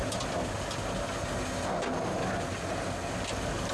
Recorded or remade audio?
recorded